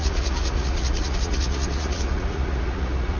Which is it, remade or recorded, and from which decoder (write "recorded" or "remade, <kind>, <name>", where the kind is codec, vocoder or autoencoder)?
remade, vocoder, Vocos